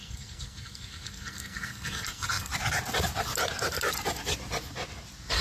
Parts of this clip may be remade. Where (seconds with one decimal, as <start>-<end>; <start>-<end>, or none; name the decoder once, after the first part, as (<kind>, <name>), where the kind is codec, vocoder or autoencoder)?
0.0-2.5 (codec, SNAC)